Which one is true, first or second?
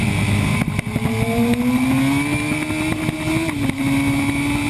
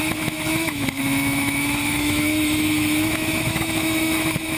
first